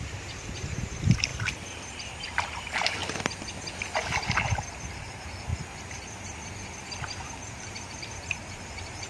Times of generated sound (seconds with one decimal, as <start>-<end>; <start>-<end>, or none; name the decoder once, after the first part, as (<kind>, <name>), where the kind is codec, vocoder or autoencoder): 0.0-3.0 (vocoder, BigVGAN v2); 4.4-5.5; 6.6-9.1